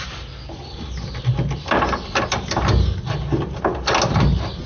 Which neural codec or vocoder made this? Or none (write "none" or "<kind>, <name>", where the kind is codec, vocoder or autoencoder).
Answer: none